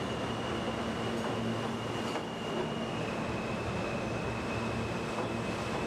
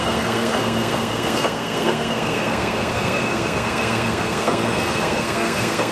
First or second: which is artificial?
second